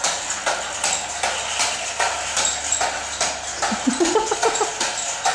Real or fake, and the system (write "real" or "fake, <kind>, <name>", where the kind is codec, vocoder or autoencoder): real